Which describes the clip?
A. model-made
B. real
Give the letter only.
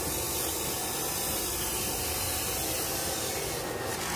B